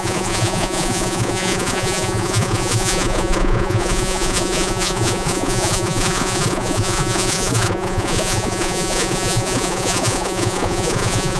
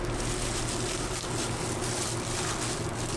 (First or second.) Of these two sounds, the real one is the second